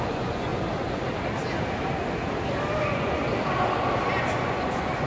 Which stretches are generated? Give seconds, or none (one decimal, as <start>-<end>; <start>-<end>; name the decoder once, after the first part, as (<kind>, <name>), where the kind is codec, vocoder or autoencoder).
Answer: 0.0-0.5 (vocoder, Vocos); 2.8-3.2; 4.4-5.1